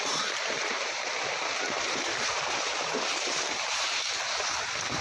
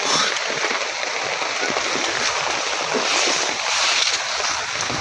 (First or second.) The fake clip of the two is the first